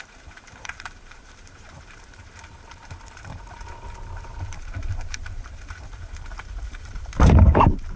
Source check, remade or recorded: remade